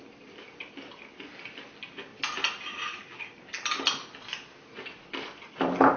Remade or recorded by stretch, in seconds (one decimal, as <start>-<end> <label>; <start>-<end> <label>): 0.0-6.0 recorded